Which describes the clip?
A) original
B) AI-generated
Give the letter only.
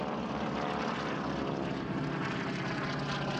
A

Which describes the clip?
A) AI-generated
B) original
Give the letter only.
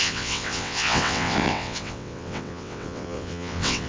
A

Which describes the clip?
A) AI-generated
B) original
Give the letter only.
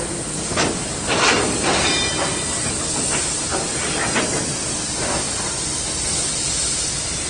B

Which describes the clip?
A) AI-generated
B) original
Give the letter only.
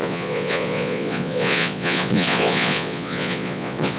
A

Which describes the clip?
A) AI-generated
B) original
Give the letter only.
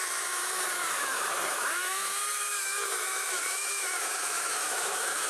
A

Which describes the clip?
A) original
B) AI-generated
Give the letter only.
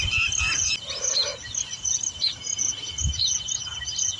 A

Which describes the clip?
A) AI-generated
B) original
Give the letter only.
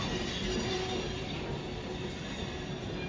B